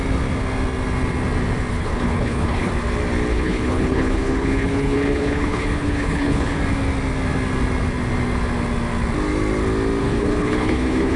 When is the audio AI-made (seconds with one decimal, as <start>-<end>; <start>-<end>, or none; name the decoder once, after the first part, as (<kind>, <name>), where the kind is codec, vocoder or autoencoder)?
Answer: 1.7-2.7 (codec, HILCodec); 3.3-6.6; 10.0-11.2